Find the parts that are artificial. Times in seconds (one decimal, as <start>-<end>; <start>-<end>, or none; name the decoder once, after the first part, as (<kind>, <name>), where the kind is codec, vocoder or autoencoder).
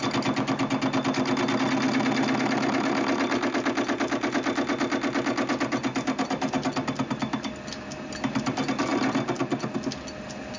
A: none